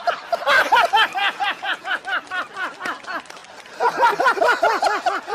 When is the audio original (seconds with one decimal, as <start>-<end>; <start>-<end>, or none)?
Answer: 0.0-1.2; 2.0-5.3